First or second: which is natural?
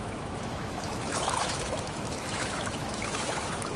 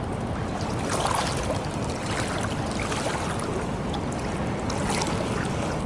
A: second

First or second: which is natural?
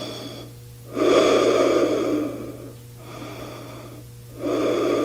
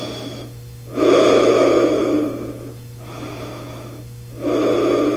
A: first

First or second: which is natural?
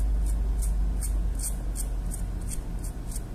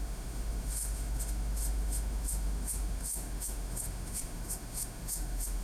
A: first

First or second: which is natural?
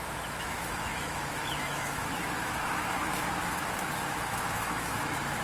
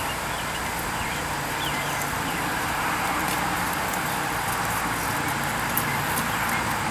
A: second